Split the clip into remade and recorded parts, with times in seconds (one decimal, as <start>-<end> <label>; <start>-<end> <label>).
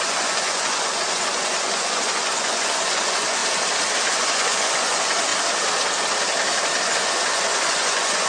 0.0-3.4 remade; 3.4-4.1 recorded; 4.1-5.3 remade; 5.3-6.8 recorded; 6.8-8.3 remade